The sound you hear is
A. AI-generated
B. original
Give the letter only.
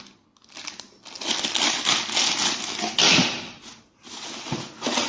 B